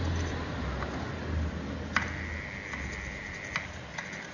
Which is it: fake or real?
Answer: real